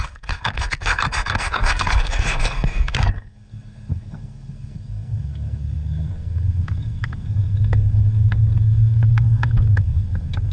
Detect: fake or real fake